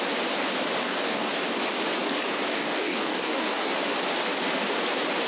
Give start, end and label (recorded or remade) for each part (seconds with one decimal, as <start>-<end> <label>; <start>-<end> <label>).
0.0-0.8 recorded; 0.8-1.3 remade; 1.3-2.5 recorded; 2.5-3.7 remade; 3.7-5.3 recorded